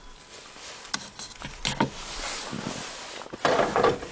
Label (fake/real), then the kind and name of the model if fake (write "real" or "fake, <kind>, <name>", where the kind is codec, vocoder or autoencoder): real